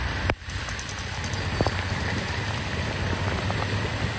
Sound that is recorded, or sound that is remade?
recorded